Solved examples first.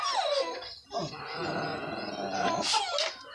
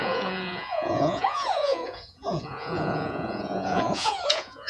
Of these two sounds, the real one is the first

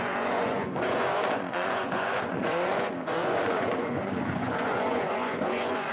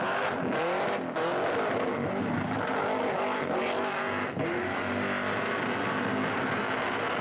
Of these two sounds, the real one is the second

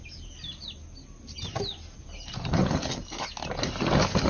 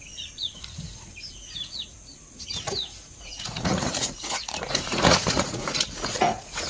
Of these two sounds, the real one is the first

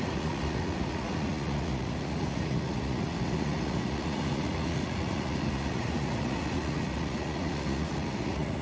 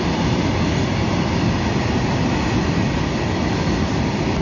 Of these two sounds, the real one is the second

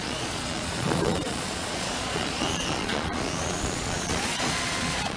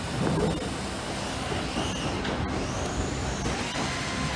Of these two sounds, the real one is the second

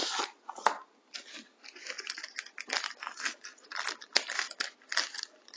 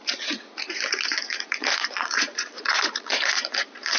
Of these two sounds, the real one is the first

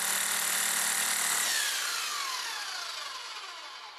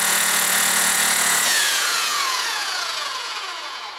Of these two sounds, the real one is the first